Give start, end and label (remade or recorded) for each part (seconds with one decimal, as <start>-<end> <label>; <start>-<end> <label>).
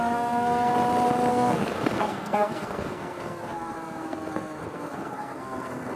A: 0.0-0.7 remade; 0.7-1.3 recorded; 1.3-6.0 remade